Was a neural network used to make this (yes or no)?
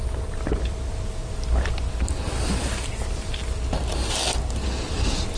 no